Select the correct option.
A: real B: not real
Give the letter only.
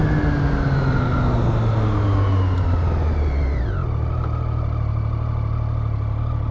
A